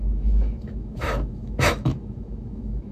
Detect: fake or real fake